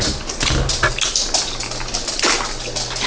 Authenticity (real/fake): real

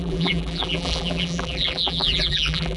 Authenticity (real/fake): fake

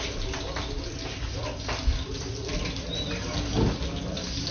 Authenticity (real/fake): real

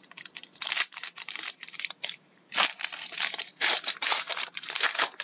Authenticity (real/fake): fake